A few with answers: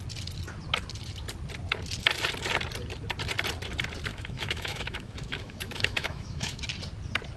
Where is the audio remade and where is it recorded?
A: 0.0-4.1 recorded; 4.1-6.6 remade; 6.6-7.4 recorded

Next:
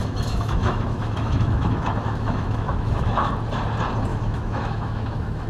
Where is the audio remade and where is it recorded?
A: 0.0-3.3 remade; 3.3-4.1 recorded; 4.1-5.5 remade

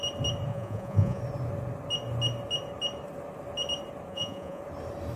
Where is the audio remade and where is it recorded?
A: 0.0-0.5 recorded; 0.5-1.2 remade; 1.2-4.1 recorded; 4.1-4.6 remade; 4.6-5.2 recorded